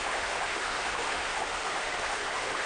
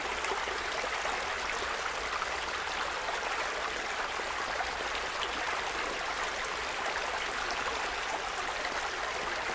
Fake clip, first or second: first